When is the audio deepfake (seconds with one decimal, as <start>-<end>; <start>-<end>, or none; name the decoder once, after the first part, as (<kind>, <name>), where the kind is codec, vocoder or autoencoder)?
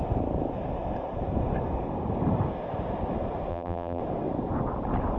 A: 3.5-4.0 (vocoder, BigVGAN v2)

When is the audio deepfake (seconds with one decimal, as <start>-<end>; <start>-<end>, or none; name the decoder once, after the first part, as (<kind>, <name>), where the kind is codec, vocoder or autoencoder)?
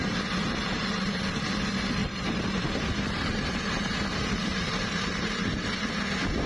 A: 2.0-5.9 (vocoder, BigVGAN v2)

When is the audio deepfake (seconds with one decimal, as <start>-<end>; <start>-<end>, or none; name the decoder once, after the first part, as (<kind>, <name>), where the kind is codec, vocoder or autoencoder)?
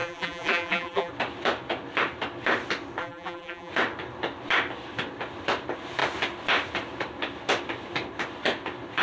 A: 0.0-1.1 (vocoder, BigVGAN v2); 3.0-3.7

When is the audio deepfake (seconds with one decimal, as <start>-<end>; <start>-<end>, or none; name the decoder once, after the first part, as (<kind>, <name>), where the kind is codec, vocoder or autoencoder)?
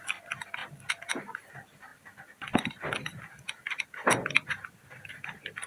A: none